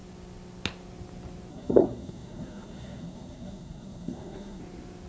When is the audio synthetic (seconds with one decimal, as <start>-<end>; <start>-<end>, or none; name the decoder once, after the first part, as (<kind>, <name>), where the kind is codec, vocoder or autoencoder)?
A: 1.5-4.6 (codec, SNAC)